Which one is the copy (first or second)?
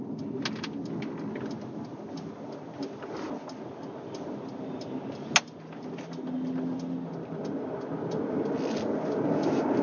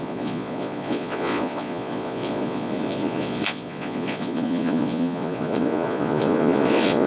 second